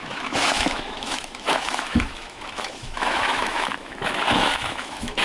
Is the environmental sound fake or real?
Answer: fake